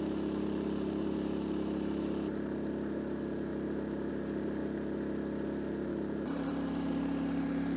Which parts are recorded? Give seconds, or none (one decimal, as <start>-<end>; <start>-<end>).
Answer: 3.5-4.1; 4.6-5.9